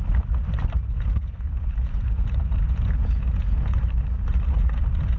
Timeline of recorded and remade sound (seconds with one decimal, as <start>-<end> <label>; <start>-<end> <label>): 0.0-0.8 recorded; 0.8-3.8 remade; 3.8-5.2 recorded